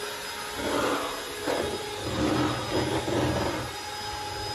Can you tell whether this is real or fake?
real